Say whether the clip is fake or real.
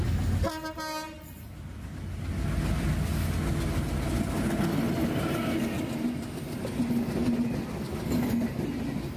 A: real